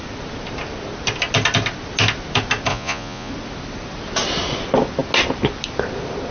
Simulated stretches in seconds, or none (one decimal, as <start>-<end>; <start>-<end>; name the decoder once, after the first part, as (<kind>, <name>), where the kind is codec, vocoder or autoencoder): 2.7-3.3 (vocoder, Vocos)